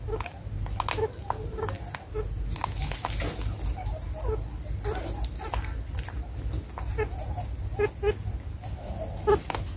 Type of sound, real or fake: real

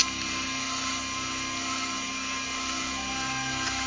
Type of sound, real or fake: real